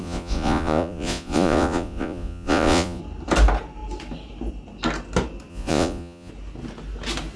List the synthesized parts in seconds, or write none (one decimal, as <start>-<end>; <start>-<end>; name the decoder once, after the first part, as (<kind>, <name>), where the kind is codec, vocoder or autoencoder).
0.0-3.0 (vocoder, Vocos); 5.5-6.3